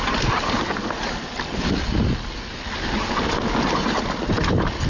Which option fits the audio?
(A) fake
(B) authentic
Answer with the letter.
B